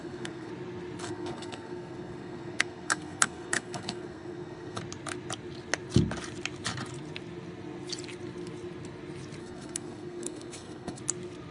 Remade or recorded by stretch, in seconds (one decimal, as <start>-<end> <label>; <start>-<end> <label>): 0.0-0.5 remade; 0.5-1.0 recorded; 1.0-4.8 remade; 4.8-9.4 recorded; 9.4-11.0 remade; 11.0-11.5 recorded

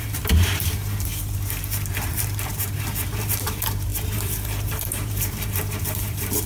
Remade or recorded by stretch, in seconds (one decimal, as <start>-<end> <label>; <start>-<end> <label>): 0.0-1.1 remade; 1.1-1.6 recorded; 1.6-6.5 remade

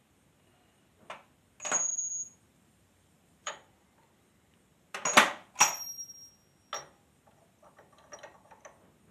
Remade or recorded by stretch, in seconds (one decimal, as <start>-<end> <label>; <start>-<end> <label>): 0.0-2.5 recorded; 2.5-3.6 remade; 3.6-9.1 recorded

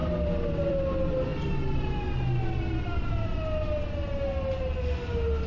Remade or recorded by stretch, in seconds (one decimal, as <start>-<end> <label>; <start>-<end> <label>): 0.0-5.5 recorded

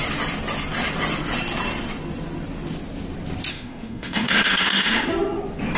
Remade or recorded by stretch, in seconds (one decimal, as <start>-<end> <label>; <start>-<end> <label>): 0.0-3.5 recorded; 3.5-5.1 remade; 5.1-5.8 recorded